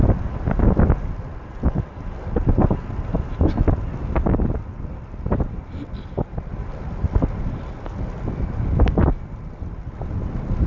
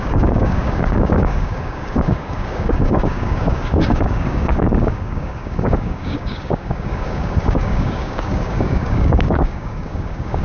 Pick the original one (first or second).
first